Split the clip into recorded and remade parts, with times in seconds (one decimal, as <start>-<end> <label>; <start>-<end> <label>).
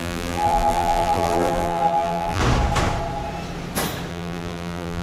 0.0-2.4 remade; 2.4-4.1 recorded; 4.1-5.0 remade